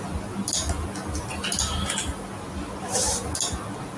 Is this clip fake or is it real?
real